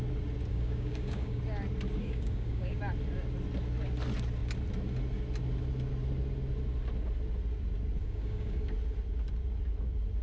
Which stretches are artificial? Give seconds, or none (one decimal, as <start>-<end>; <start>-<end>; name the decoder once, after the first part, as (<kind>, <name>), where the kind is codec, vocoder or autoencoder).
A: 0.5-1.4 (codec, DAC); 2.0-2.8; 8.0-8.7